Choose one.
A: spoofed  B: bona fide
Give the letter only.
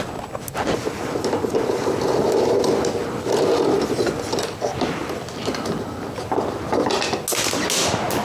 B